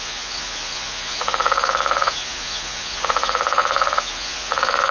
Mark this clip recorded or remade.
remade